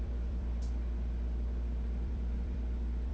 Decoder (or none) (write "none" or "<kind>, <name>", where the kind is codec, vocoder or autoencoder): vocoder, BigVGAN v2